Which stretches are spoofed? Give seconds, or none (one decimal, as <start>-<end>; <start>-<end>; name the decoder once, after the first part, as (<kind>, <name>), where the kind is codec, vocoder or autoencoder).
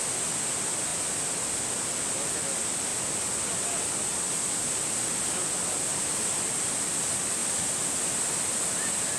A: none